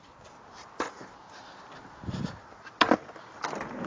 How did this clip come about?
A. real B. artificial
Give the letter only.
A